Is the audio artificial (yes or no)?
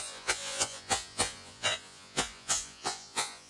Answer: yes